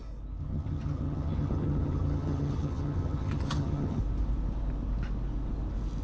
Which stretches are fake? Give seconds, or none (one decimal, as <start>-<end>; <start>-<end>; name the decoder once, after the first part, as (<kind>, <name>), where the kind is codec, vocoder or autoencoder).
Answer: 0.4-4.0 (vocoder, HiFi-GAN)